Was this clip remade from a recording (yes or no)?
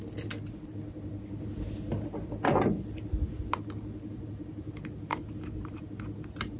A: no